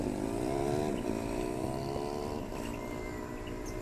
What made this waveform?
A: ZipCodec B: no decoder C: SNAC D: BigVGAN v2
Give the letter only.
B